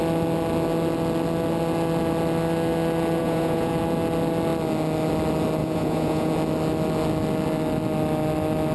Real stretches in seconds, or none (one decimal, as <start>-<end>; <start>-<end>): 0.0-3.2; 3.7-5.6; 6.3-8.7